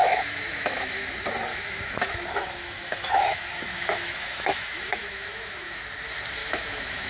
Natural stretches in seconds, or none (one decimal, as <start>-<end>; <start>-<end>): 1.1-1.5; 5.8-6.4